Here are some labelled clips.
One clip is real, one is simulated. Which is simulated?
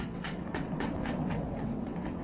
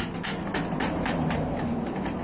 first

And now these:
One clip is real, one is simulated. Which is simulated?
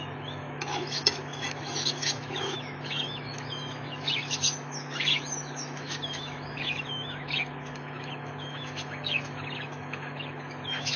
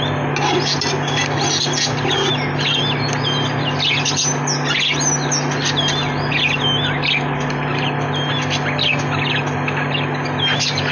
first